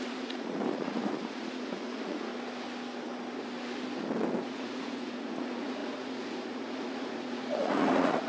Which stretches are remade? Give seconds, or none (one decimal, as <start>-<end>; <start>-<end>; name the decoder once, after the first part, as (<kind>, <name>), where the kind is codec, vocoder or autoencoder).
0.0-2.3 (vocoder, Vocos); 4.4-8.3